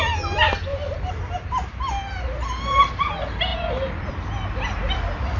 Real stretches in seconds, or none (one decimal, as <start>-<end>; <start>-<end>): 0.0-0.7; 1.5-3.5; 4.1-5.4